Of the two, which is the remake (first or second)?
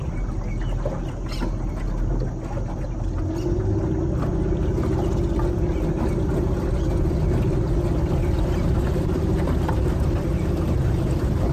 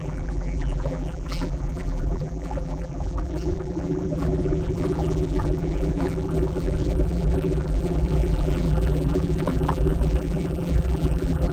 second